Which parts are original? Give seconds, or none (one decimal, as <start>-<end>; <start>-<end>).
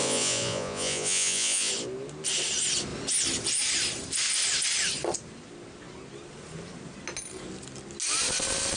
1.7-8.8